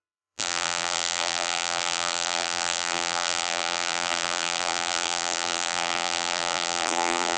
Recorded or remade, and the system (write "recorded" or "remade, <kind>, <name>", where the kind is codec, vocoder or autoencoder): remade, vocoder, BigVGAN v2